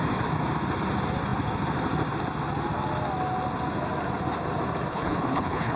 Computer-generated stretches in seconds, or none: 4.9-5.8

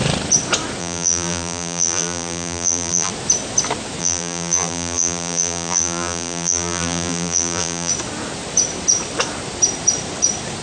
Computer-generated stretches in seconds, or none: 0.8-3.1; 4.0-7.9